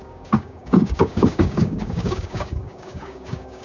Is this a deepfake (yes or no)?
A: yes